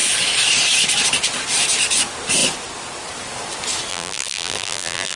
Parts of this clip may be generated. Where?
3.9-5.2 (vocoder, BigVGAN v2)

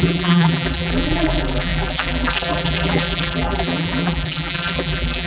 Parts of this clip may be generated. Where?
0.0-5.3 (vocoder, BigVGAN v2)

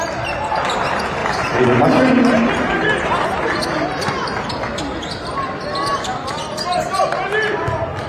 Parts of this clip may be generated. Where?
1.2-4.5 (vocoder, BigVGAN v2)